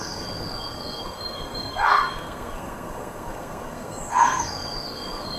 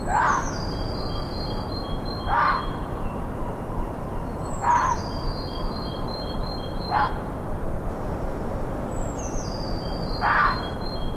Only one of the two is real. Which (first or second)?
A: second